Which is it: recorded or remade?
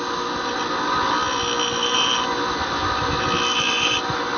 recorded